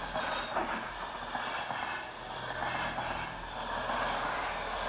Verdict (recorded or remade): recorded